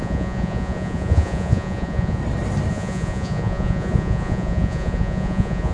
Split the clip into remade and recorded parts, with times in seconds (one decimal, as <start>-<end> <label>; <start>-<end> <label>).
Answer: 0.0-2.2 remade; 2.2-2.7 recorded; 2.7-5.7 remade